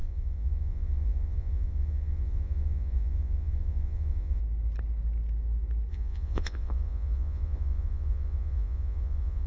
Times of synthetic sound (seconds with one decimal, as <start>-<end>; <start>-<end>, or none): 0.0-4.4; 5.9-9.5